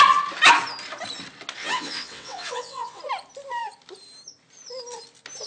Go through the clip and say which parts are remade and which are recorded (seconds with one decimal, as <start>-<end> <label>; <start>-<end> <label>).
0.0-1.6 recorded; 1.6-3.0 remade; 3.0-5.5 recorded